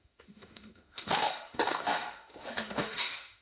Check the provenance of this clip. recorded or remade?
remade